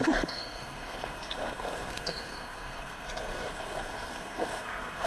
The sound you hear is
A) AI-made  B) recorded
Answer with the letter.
A